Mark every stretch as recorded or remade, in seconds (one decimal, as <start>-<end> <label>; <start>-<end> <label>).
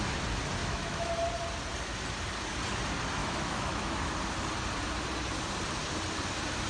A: 0.0-0.6 recorded; 0.6-1.1 remade; 1.1-3.2 recorded; 3.2-4.1 remade; 4.1-6.7 recorded